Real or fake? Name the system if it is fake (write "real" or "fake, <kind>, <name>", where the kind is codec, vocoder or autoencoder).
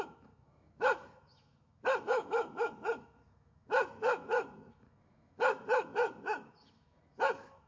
fake, autoencoder, DAC-VAE